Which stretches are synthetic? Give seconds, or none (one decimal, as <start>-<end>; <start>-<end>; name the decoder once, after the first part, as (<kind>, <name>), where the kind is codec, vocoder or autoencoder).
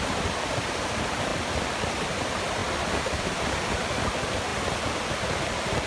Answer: 0.0-4.5 (vocoder, BigVGAN v2); 5.1-5.9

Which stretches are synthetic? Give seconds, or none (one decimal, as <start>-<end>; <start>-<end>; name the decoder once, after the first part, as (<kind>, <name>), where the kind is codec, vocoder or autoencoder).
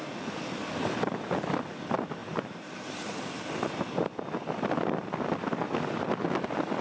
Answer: 2.2-3.7 (vocoder, BigVGAN v2)